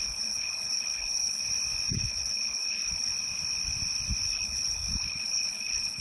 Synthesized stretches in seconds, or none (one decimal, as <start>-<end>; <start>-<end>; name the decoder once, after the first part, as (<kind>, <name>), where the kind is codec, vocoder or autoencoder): 0.0-1.4 (codec, HILCodec); 1.9-3.1; 4.2-6.0